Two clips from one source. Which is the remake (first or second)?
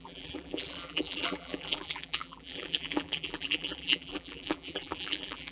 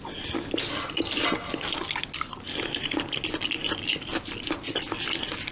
first